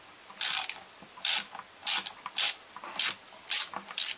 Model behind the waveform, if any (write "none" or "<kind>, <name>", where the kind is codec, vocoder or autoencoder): vocoder, BigVGAN v2